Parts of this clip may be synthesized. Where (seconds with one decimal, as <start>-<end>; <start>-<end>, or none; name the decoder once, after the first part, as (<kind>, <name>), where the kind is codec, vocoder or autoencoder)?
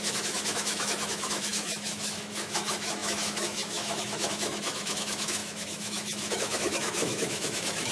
0.0-7.9 (autoencoder, DAC-VAE)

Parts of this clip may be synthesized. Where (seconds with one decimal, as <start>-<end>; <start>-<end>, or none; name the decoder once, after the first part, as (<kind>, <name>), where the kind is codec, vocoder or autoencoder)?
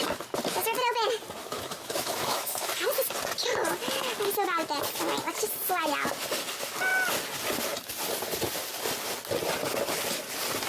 1.4-2.7 (autoencoder, DAC-VAE)